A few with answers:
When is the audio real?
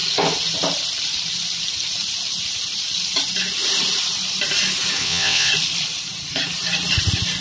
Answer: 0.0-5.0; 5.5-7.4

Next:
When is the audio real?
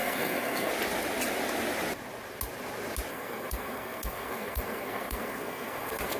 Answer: 0.7-3.1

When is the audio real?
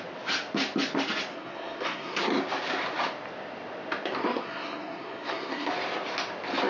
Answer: 0.0-1.3; 2.4-4.2; 5.7-6.7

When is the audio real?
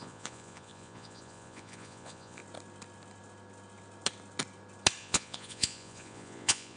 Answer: 2.4-5.0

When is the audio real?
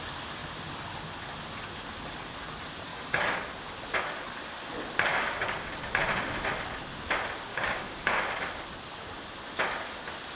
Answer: 0.0-2.9; 3.4-5.1; 5.7-7.5; 8.2-10.4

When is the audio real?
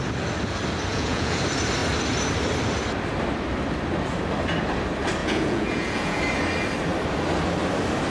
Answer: 0.0-0.9; 1.4-5.2; 6.2-8.1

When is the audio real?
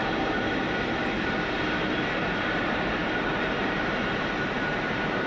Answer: none